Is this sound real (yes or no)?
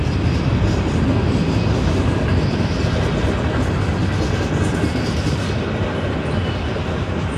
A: yes